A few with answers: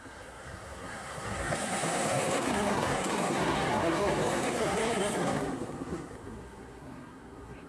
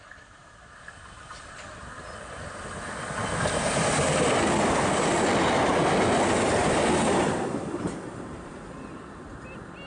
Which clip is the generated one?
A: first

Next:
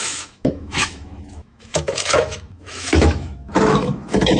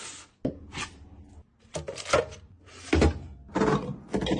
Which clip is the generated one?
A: first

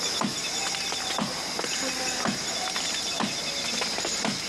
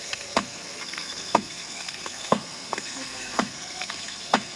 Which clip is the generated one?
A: second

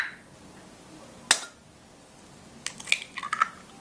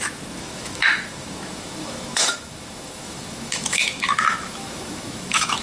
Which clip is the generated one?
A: second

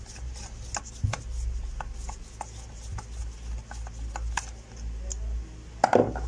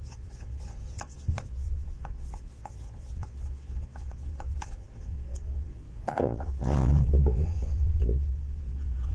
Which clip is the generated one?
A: second